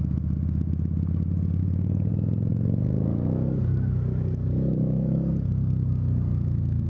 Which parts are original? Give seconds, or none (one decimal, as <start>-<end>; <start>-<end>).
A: 0.0-1.6; 2.1-2.5

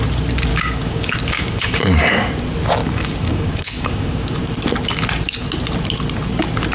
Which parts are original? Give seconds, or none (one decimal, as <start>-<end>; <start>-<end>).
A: 0.0-0.5; 2.3-2.8; 4.4-6.7

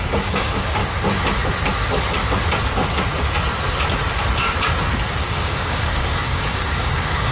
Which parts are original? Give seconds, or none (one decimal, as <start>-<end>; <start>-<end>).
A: 0.8-5.2

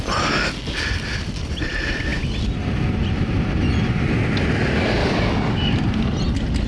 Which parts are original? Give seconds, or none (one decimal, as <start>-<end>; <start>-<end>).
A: 0.0-5.0; 5.7-6.7

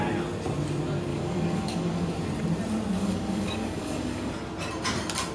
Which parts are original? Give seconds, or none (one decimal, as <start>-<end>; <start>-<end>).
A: 0.0-1.1; 2.1-3.0; 4.3-5.3

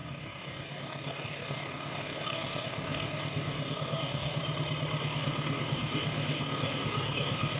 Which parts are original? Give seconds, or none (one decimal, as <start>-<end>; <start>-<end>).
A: 4.4-5.0

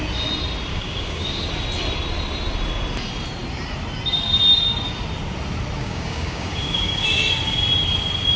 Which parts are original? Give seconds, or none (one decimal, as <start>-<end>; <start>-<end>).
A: 0.0-0.7; 1.4-5.8; 7.0-8.4